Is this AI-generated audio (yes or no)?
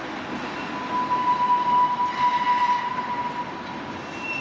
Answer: no